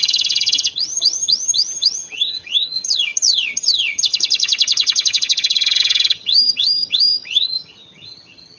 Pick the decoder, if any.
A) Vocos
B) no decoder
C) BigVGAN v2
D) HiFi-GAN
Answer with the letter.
D